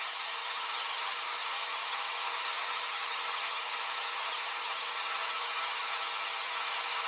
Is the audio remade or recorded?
remade